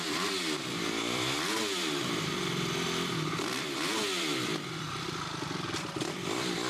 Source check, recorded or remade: remade